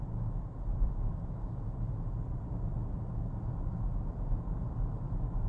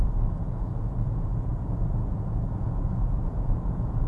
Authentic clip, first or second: first